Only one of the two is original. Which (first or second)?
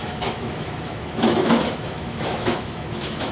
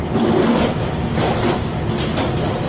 second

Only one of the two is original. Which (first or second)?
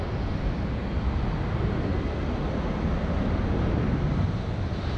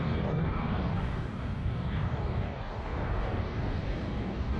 first